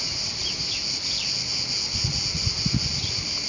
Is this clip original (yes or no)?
yes